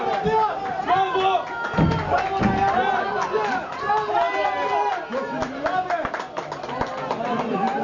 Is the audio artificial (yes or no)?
no